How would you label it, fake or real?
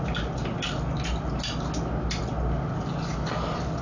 real